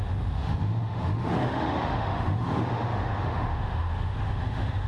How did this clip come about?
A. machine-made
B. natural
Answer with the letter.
A